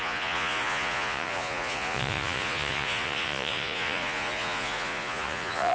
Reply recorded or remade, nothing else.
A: remade